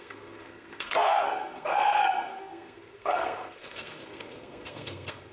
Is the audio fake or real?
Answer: fake